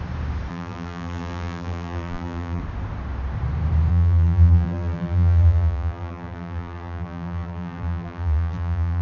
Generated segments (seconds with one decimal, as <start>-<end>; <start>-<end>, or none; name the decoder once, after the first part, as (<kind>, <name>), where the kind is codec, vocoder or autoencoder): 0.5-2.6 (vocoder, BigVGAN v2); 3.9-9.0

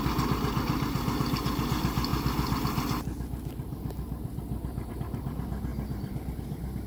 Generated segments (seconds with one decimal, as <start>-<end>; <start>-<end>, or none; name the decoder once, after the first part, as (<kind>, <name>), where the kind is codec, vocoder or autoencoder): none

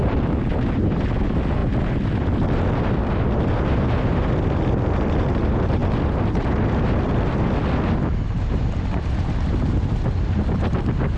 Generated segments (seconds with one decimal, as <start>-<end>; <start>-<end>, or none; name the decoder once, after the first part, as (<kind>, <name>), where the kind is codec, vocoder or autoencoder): none

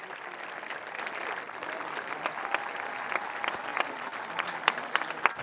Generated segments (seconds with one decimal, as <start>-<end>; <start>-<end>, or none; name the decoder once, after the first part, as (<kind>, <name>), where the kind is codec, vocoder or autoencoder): none

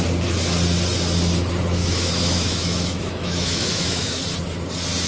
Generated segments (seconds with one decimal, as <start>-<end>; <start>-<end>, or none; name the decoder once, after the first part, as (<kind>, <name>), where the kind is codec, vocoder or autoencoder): 1.8-4.2 (autoencoder, DAC-VAE)

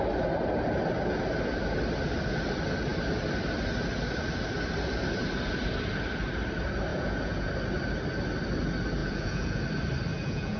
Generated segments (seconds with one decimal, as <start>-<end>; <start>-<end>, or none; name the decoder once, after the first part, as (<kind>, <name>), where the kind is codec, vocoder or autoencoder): 6.9-7.5 (vocoder, Vocos); 9.0-9.6; 10.1-10.6